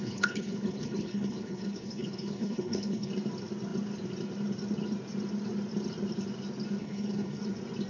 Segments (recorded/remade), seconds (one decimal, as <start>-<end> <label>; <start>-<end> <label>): 0.0-3.1 remade; 3.1-6.8 recorded; 6.8-7.4 remade; 7.4-7.9 recorded